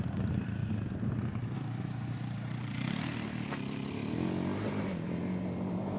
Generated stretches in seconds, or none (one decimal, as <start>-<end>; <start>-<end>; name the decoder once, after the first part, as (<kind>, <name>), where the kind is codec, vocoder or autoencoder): 0.0-0.6 (vocoder, BigVGAN v2); 2.1-3.1; 4.7-6.0